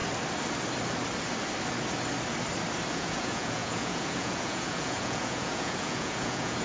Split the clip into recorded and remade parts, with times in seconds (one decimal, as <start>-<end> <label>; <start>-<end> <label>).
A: 0.0-2.9 recorded; 2.9-6.6 remade